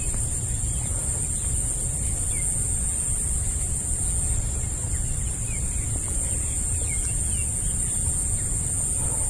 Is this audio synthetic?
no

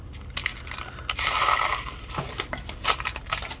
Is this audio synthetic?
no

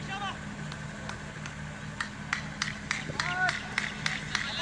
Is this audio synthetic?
no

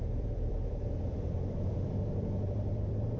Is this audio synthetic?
yes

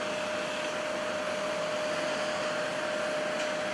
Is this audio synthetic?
no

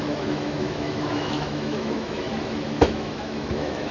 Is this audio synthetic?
yes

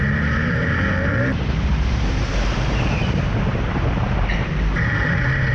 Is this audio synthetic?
yes